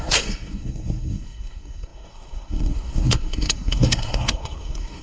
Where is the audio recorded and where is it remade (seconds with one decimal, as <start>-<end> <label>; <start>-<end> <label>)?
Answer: 0.0-5.0 remade